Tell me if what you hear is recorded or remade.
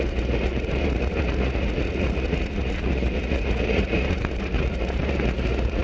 remade